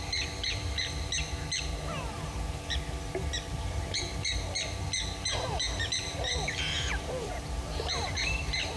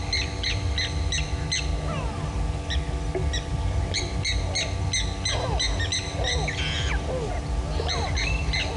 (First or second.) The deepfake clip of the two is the first